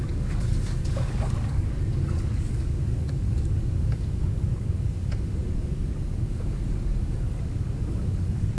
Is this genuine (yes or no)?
no